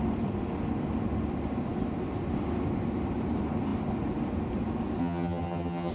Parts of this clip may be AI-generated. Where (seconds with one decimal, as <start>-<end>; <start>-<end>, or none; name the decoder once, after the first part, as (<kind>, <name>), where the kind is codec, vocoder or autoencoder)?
5.0-5.9 (vocoder, HiFi-GAN)